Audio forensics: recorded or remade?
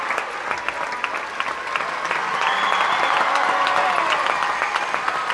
recorded